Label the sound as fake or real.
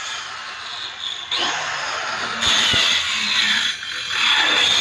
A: real